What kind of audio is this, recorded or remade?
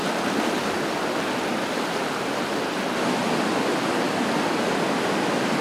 recorded